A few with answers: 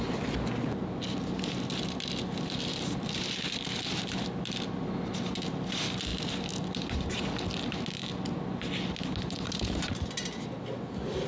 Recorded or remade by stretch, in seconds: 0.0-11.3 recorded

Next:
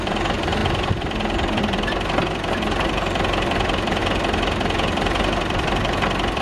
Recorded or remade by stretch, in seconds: 0.0-6.4 remade

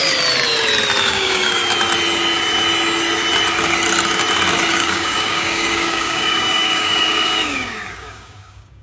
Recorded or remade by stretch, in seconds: 0.0-1.0 recorded; 1.0-1.6 remade; 1.6-4.7 recorded; 4.7-8.8 remade

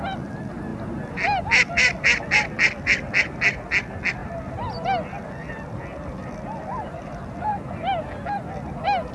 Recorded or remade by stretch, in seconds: 0.0-0.7 recorded; 0.7-1.4 remade; 1.4-9.1 recorded

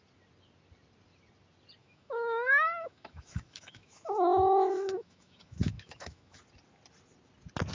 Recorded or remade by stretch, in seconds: 0.0-1.8 recorded; 1.8-6.4 remade; 6.4-7.7 recorded

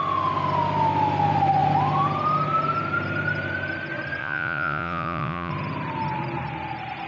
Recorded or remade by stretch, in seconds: 0.0-4.2 recorded; 4.2-5.5 remade; 5.5-7.1 recorded

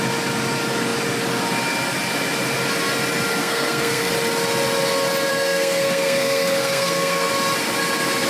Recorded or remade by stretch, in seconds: 0.0-3.4 recorded; 3.4-4.1 remade; 4.1-5.3 recorded; 5.3-7.3 remade; 7.3-8.3 recorded

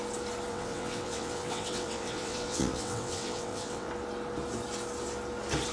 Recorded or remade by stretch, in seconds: 0.0-0.5 recorded; 0.5-3.9 remade; 3.9-5.7 recorded